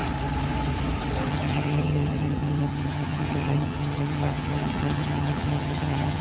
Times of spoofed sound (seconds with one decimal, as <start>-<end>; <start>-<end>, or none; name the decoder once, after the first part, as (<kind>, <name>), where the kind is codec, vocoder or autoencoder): 1.3-6.2 (vocoder, HiFi-GAN)